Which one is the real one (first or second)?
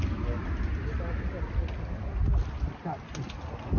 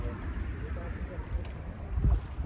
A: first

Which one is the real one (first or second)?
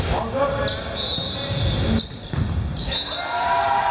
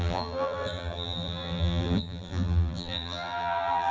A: first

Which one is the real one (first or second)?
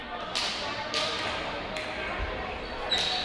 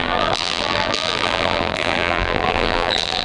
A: first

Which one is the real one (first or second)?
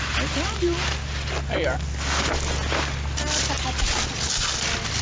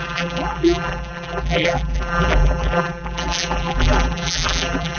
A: first